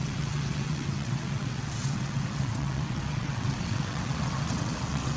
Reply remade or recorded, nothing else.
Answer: remade